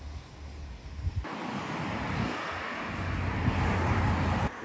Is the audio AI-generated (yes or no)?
no